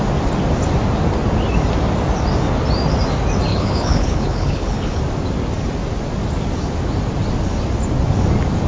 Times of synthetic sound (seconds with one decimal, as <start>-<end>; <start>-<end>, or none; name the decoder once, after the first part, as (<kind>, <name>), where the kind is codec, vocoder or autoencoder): 3.5-5.0 (codec, HILCodec)